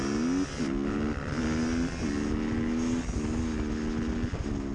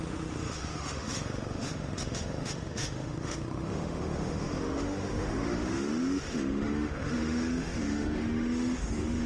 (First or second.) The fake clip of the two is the second